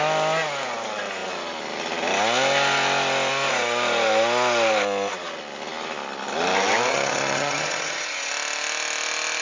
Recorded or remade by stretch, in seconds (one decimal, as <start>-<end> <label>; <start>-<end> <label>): 0.0-6.9 recorded; 6.9-8.3 remade; 8.3-9.4 recorded